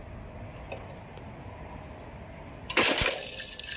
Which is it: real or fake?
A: real